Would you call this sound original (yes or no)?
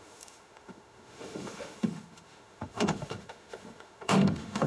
no